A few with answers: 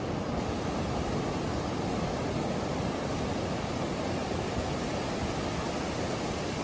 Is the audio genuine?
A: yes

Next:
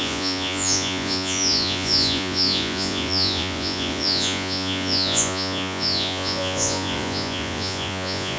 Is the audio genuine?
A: no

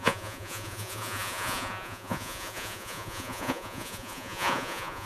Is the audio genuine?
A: no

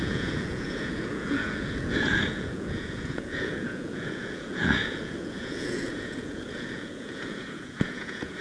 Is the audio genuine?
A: no